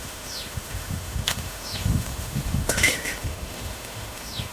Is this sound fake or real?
fake